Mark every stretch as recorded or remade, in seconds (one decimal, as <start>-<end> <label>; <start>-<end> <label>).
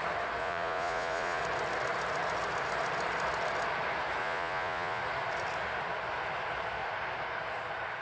0.0-0.4 recorded; 0.4-1.4 remade; 1.4-4.2 recorded; 4.2-5.0 remade; 5.0-8.0 recorded